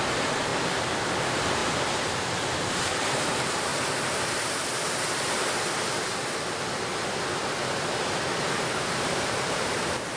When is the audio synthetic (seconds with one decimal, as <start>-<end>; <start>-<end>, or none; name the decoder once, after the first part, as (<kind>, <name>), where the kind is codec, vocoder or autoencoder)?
0.0-0.5 (vocoder, BigVGAN v2); 1.2-1.6; 2.5-3.7; 8.7-10.2